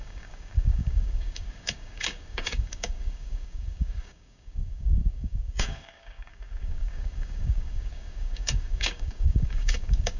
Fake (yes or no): yes